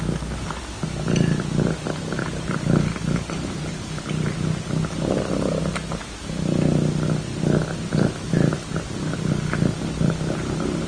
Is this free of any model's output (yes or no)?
yes